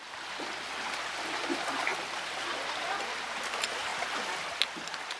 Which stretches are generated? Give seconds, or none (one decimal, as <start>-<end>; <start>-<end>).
1.9-2.4; 3.9-4.5